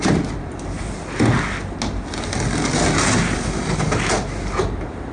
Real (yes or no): yes